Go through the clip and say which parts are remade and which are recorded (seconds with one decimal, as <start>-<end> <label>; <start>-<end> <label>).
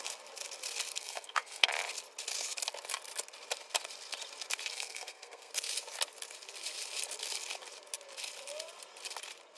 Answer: 0.0-1.0 recorded; 1.0-1.7 remade; 1.7-4.7 recorded; 4.7-5.5 remade; 5.5-9.6 recorded